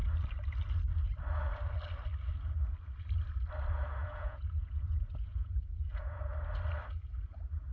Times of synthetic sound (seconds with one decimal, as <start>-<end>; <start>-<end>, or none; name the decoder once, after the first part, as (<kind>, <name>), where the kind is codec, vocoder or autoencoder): 4.0-6.2 (vocoder, Vocos)